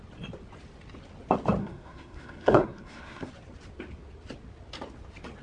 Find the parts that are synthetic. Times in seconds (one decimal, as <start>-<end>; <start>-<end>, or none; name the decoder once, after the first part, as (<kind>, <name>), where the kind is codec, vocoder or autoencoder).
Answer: 1.6-3.3 (codec, SNAC)